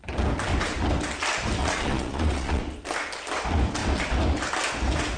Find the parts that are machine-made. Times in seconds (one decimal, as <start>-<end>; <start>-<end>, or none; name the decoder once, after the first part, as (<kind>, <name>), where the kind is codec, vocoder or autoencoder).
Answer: 1.6-2.6 (vocoder, Vocos)